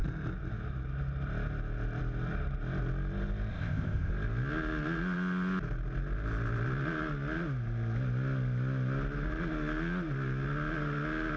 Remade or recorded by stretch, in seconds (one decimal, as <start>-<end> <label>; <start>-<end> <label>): 0.0-3.5 recorded; 3.5-4.1 remade; 4.1-11.4 recorded